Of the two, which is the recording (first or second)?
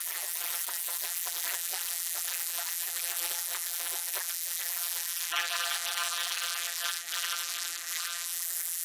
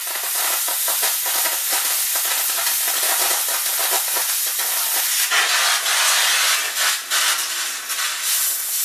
second